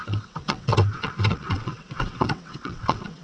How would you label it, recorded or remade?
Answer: remade